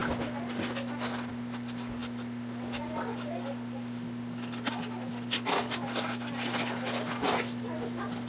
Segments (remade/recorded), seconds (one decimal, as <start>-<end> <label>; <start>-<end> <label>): 0.0-8.3 recorded